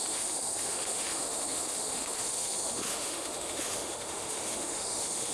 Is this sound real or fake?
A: fake